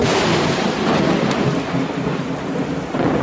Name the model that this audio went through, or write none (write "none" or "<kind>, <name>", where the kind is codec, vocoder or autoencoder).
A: none